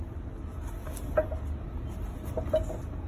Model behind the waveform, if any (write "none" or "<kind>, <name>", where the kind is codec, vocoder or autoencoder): none